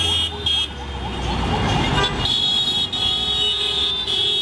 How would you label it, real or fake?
real